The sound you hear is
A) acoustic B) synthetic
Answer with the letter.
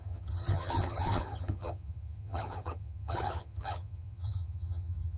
B